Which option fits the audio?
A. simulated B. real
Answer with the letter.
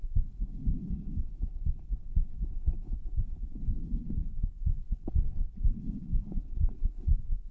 A